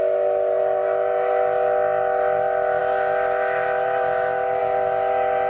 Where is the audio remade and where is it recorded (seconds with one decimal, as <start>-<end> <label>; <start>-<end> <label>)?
0.0-5.5 recorded